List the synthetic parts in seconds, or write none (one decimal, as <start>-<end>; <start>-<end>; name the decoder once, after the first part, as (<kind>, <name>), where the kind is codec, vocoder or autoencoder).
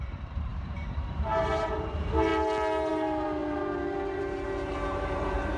0.0-2.3 (vocoder, BigVGAN v2); 2.9-5.6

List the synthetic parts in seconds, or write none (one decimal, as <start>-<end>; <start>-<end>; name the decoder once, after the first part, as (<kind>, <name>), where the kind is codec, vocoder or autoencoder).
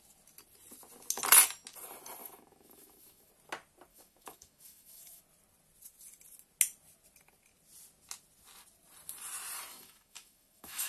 2.2-3.3 (autoencoder, DAC-VAE); 3.9-5.2; 9.7-10.9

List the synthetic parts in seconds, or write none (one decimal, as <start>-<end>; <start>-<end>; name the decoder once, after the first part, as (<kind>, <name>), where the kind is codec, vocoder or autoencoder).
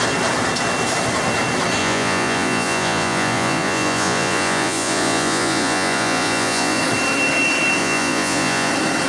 1.8-6.8 (vocoder, Vocos); 7.8-8.7